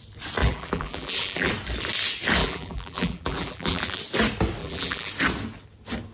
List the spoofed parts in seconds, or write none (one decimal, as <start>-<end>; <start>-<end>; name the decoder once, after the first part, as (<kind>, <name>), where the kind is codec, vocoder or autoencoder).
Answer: 0.4-1.5 (vocoder, BigVGAN v2); 2.4-4.0; 4.6-5.1